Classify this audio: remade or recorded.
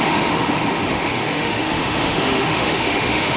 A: remade